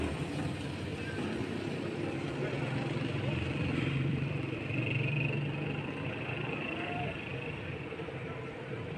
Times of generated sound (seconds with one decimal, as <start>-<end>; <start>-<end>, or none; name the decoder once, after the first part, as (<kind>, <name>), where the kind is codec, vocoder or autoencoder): 0.0-9.0 (vocoder, BigVGAN v2)